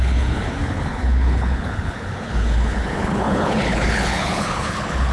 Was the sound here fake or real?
fake